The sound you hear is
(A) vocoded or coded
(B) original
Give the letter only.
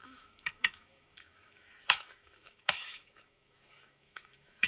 A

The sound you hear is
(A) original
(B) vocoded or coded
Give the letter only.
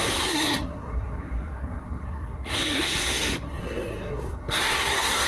B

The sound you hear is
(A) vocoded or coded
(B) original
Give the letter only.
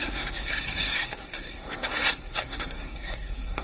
A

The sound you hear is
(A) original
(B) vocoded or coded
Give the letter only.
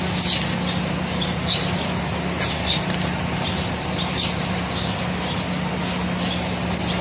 A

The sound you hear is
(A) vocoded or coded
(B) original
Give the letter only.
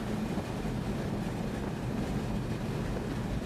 B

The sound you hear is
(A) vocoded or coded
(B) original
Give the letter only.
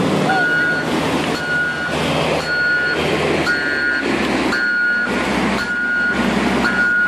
B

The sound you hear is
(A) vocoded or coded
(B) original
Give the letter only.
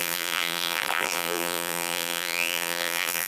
A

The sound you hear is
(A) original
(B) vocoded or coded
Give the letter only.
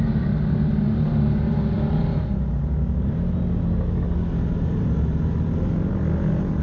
A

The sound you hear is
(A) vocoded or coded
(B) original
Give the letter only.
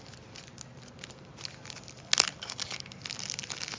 B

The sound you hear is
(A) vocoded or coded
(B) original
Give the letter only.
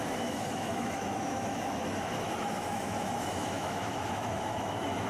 A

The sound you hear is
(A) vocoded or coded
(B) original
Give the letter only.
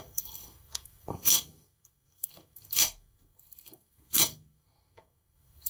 A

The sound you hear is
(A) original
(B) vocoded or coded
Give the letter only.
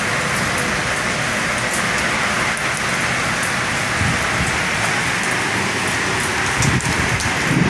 A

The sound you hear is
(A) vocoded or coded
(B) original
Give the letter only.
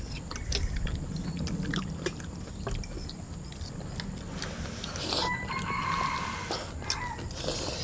B